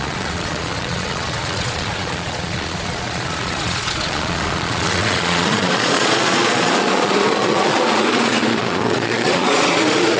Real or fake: fake